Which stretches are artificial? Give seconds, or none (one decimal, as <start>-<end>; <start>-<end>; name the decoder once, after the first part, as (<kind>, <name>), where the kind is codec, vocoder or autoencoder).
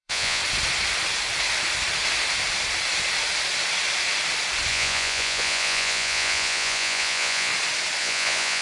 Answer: 0.0-0.4 (vocoder, Vocos); 4.7-7.5; 8.0-8.6